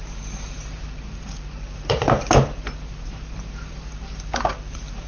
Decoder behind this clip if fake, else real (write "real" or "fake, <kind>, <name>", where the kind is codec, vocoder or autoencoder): fake, vocoder, BigVGAN v2